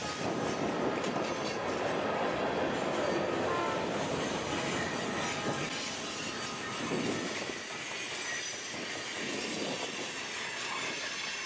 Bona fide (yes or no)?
yes